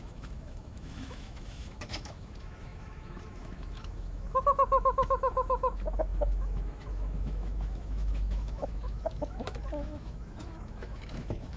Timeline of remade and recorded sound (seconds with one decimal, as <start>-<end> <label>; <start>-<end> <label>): 0.0-11.6 remade